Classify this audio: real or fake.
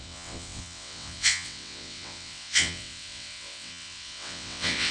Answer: fake